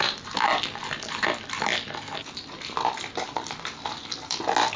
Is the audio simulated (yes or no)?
no